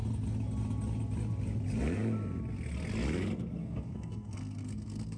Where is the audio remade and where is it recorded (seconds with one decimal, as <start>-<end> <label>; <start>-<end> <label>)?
0.0-3.6 recorded; 3.6-5.2 remade